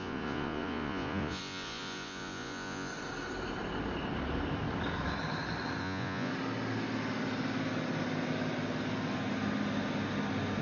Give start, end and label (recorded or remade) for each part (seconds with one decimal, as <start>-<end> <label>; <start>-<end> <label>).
0.0-2.9 remade; 2.9-5.8 recorded; 5.8-6.3 remade; 6.3-10.6 recorded